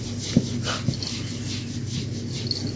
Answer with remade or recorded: recorded